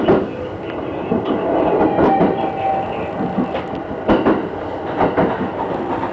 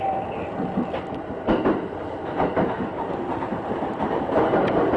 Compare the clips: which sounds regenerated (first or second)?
second